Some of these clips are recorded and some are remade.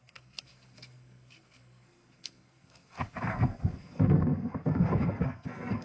remade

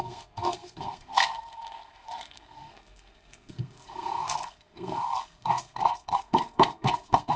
remade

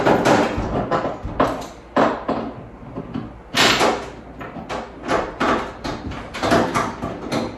recorded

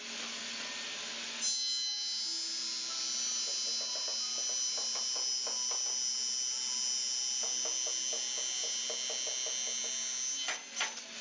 recorded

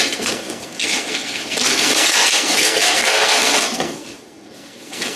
remade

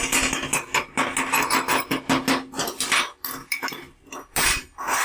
recorded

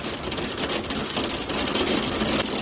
recorded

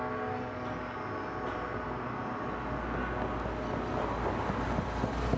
recorded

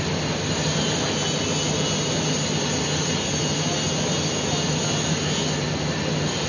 recorded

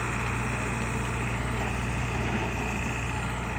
recorded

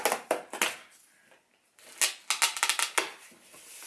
recorded